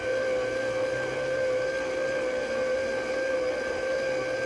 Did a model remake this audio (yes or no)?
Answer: no